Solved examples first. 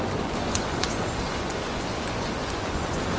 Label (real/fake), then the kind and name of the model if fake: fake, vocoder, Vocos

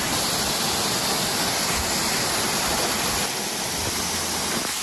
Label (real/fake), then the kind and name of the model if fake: real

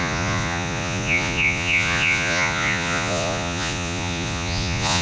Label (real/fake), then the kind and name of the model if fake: fake, vocoder, Vocos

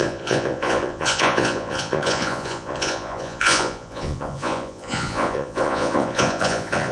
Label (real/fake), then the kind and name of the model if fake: fake, vocoder, Vocos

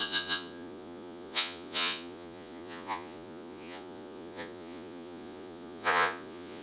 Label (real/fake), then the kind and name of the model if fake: fake, vocoder, Vocos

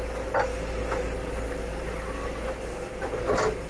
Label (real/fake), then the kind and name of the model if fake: real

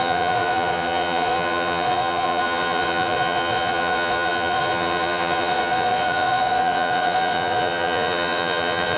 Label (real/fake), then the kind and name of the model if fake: fake, vocoder, Vocos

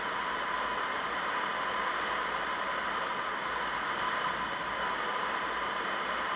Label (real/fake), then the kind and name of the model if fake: real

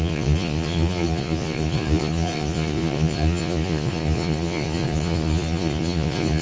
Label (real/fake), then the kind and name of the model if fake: fake, vocoder, Vocos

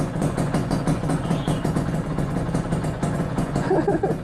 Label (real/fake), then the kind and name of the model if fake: fake, vocoder, Vocos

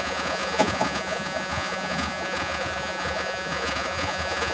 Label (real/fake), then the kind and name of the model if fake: fake, vocoder, Vocos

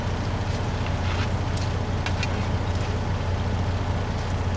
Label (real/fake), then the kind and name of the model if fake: real